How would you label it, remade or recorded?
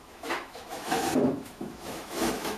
remade